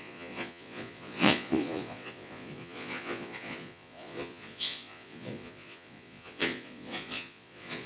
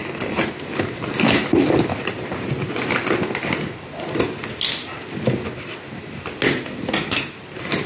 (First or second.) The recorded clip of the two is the second